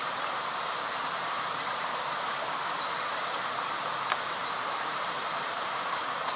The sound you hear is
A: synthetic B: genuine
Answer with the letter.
A